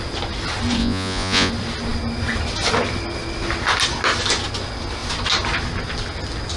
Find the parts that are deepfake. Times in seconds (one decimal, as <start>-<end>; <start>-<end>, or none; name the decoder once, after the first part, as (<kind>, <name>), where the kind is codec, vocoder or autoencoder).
0.8-1.5 (vocoder, Vocos)